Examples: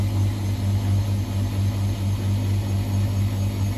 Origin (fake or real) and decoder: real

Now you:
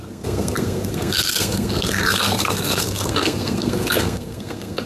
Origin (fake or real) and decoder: fake, codec, SNAC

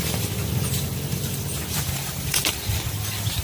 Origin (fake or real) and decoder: fake, vocoder, BigVGAN v2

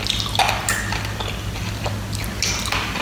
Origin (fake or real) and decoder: real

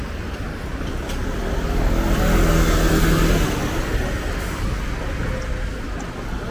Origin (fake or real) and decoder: real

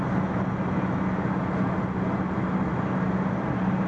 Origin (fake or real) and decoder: real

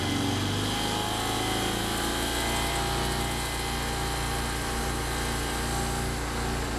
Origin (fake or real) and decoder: real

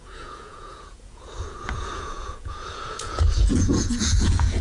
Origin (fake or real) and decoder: fake, vocoder, Vocos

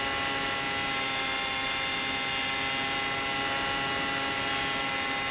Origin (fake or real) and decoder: real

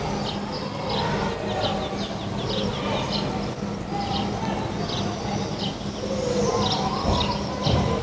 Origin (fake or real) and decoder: real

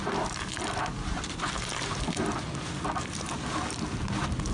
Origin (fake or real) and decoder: real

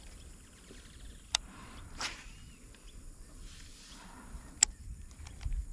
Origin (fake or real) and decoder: fake, vocoder, BigVGAN v2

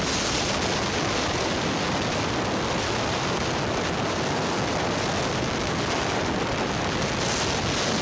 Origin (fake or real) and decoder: real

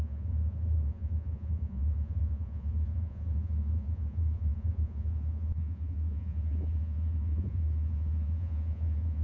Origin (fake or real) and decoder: fake, vocoder, Vocos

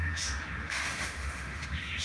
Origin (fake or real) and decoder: fake, autoencoder, DAC-VAE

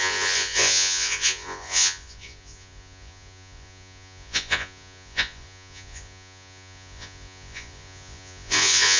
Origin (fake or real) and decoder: fake, vocoder, Vocos